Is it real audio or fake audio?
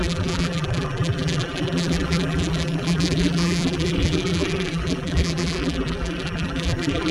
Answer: fake